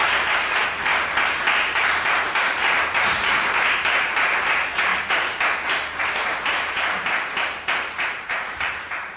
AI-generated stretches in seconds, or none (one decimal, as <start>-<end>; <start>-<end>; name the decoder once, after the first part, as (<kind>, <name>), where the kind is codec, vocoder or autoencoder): 0.0-0.9 (vocoder, BigVGAN v2); 1.5-4.9; 6.0-9.2